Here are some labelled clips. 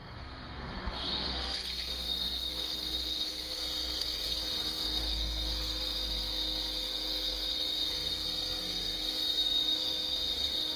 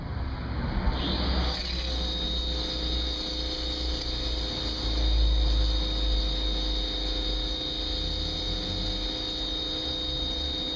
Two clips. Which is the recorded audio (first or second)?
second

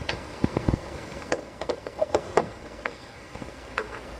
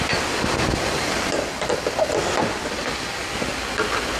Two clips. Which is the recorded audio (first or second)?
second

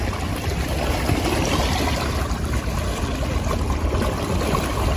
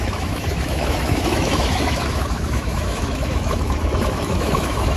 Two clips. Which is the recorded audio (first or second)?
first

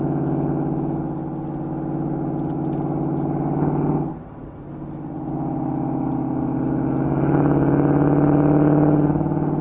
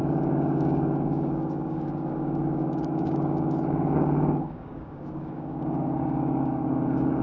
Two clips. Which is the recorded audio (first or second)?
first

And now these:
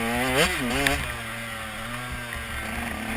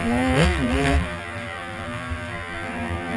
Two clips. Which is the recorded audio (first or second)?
first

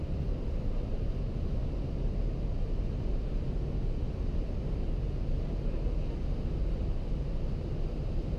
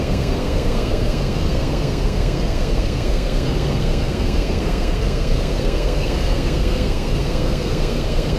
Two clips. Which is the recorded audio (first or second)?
first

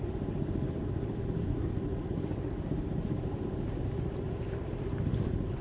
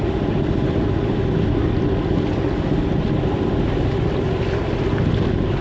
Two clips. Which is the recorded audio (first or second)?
second